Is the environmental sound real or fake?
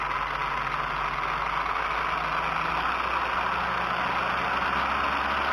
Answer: real